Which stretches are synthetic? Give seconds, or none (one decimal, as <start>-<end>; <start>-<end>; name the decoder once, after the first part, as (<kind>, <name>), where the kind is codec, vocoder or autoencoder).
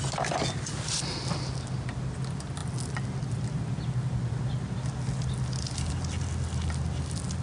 none